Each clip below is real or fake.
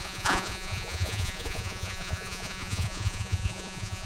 fake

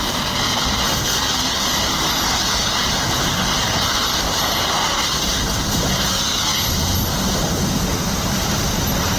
real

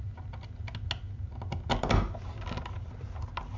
real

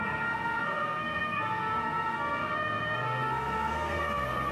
fake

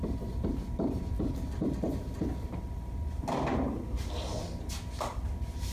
real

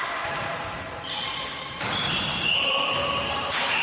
fake